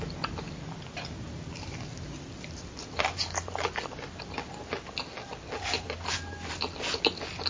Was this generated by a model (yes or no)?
no